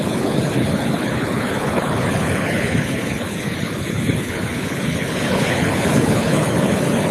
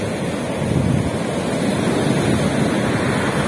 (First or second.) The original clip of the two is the second